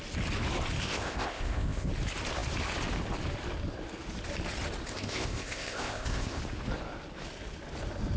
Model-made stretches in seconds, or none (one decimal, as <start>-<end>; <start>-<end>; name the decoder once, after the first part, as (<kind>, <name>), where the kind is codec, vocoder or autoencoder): 0.8-1.9 (codec, ZipCodec); 4.9-6.4